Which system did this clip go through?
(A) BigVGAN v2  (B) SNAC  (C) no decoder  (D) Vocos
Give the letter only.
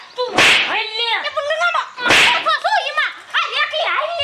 C